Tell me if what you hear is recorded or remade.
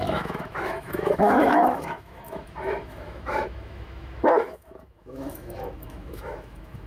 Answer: remade